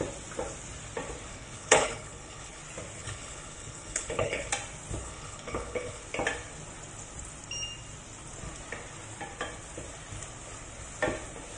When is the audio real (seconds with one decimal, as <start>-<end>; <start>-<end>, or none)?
0.0-1.3; 2.6-3.0; 4.5-5.0; 6.0-11.6